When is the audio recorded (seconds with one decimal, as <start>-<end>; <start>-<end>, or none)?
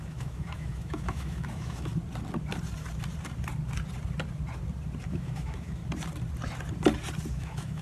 1.9-5.1; 5.8-7.3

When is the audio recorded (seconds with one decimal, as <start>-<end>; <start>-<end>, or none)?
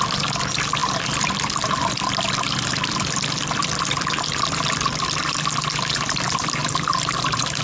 0.0-0.8; 5.4-6.6